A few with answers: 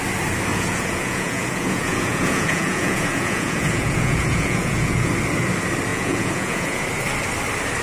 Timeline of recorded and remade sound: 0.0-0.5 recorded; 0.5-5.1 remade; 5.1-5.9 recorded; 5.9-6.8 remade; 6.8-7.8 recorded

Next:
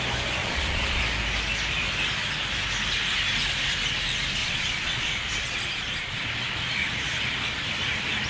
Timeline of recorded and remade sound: 0.0-0.4 recorded; 0.4-1.0 remade; 1.0-4.4 recorded; 4.4-5.1 remade; 5.1-8.3 recorded

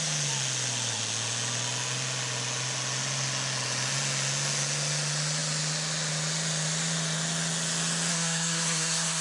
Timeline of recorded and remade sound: 0.0-8.1 recorded; 8.1-9.2 remade

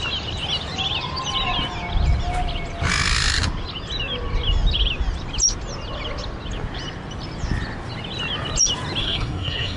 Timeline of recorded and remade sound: 0.0-9.0 recorded; 9.0-9.8 remade

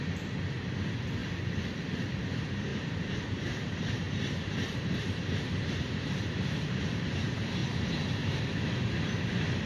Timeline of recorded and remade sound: 0.0-2.7 recorded; 2.7-6.8 remade; 6.8-7.6 recorded; 7.6-8.4 remade; 8.4-9.7 recorded

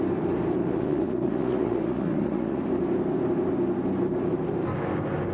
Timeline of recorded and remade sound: 0.0-0.6 recorded; 0.6-2.6 remade; 2.6-5.3 recorded

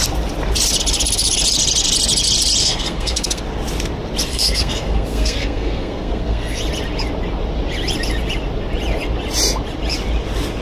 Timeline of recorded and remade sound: 0.0-2.6 recorded; 2.6-3.4 remade; 3.4-4.3 recorded; 4.3-6.6 remade; 6.6-10.6 recorded

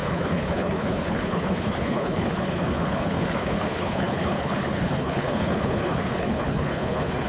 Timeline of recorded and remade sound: 0.0-7.3 remade